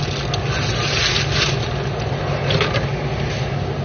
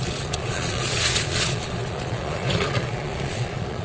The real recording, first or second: first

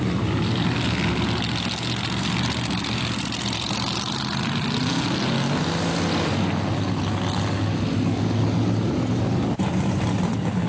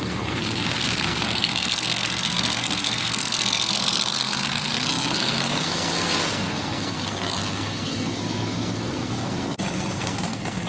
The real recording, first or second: first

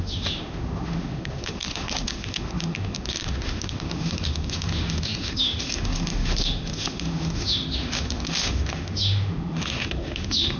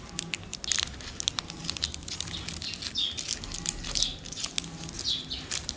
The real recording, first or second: second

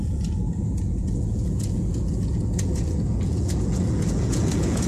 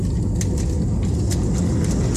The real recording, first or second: second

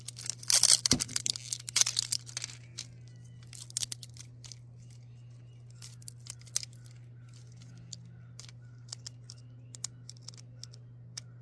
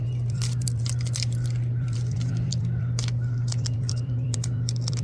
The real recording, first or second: first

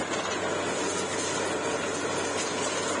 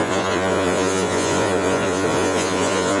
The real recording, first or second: first